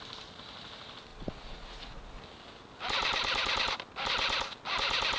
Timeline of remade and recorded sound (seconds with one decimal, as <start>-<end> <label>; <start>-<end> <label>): 0.0-1.1 recorded; 1.1-2.2 remade; 2.2-5.2 recorded